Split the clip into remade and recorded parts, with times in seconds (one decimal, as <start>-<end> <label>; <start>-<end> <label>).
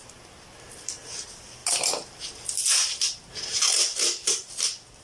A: 0.0-5.0 recorded